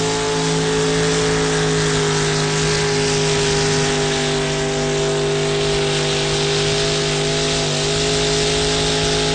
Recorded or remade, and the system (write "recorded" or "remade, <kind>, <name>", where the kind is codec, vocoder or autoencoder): recorded